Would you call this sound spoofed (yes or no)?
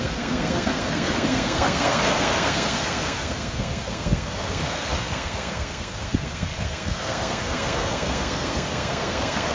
yes